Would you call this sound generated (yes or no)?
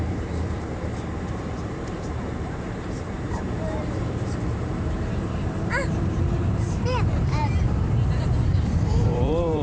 yes